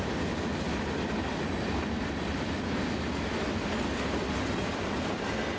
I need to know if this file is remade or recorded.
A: recorded